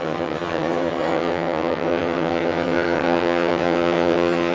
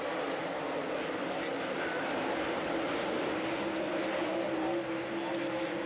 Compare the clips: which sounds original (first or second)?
second